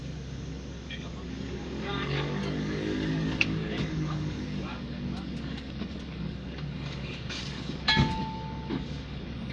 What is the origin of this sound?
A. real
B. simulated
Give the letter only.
B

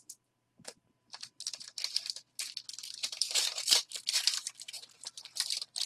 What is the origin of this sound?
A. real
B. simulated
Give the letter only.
B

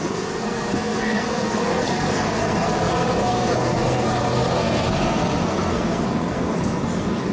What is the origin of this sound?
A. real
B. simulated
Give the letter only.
B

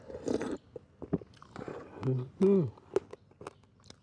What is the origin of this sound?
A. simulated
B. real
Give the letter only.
B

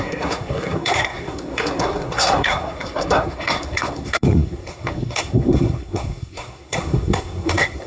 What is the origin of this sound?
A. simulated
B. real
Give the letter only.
A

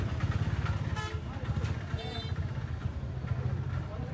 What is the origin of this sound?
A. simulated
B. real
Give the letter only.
B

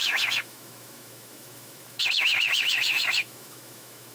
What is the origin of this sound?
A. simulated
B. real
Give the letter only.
A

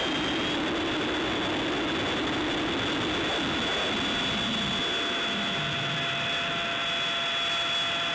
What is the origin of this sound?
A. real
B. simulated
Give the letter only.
A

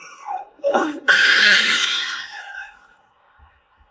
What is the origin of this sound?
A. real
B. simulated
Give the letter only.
B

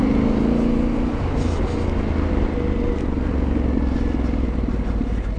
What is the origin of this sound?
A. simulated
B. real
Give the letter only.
B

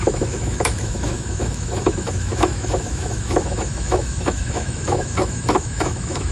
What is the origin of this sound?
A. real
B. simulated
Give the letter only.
B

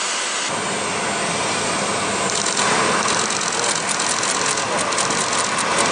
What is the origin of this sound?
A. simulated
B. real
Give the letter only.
B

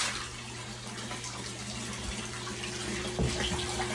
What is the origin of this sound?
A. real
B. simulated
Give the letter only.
A